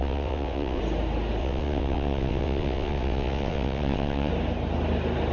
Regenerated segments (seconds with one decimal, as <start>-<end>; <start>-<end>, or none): 0.0-0.8; 1.4-4.3